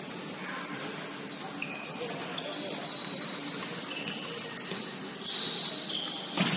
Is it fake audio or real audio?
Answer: real